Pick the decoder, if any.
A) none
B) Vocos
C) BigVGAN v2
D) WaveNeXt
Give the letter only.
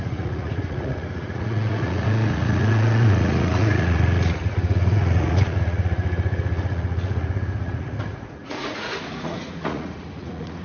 B